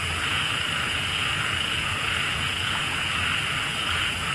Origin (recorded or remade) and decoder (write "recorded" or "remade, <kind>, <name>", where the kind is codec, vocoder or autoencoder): remade, vocoder, Vocos